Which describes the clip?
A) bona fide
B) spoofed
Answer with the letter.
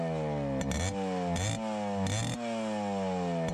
A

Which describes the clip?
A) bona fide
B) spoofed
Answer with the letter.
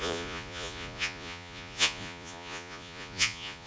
B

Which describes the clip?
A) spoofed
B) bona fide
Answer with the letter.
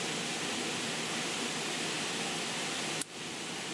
B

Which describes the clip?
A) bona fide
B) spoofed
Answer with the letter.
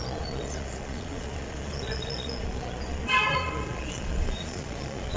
B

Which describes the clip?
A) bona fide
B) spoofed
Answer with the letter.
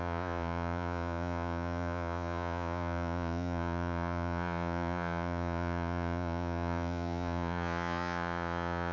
B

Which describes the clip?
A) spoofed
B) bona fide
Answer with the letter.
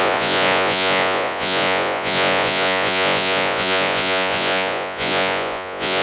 A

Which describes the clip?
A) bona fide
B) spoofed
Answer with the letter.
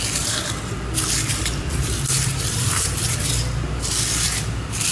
A